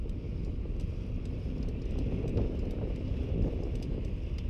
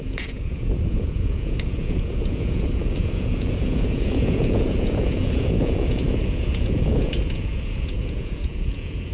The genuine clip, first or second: first